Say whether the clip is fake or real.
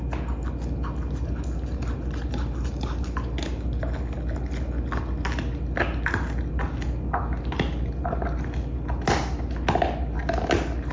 real